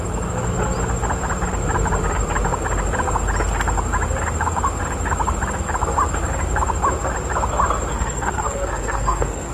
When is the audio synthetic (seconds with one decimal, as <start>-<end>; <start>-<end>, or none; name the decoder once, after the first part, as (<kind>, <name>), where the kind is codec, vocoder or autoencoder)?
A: 7.9-9.5 (codec, SNAC)